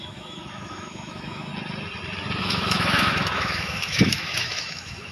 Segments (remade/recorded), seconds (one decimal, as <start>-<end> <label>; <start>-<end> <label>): 0.0-1.5 remade; 1.5-2.4 recorded; 2.4-5.1 remade